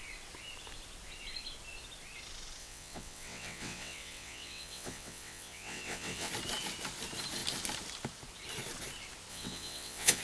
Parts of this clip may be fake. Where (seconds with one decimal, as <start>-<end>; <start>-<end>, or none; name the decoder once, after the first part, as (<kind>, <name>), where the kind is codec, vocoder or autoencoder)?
2.6-6.3 (vocoder, WaveNeXt); 9.3-10.2